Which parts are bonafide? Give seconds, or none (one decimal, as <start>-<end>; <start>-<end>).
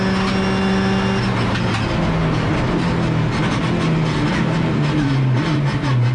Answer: 0.0-6.1